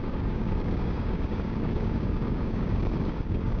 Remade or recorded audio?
remade